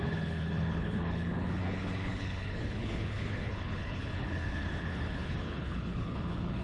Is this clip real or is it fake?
fake